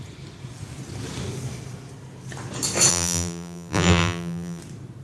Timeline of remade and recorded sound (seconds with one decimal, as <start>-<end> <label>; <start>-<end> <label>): 0.0-2.9 recorded; 2.9-4.6 remade; 4.6-5.0 recorded